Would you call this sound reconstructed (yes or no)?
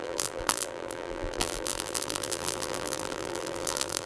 yes